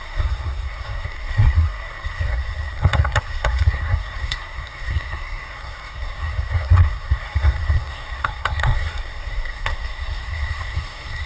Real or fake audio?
fake